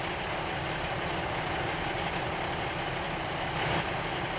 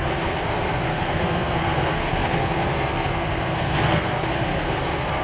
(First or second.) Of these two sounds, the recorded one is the first